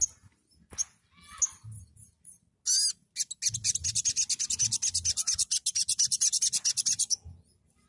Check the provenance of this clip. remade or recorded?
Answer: recorded